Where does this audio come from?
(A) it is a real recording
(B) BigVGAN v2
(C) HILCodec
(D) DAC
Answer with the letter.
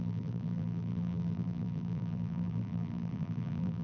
B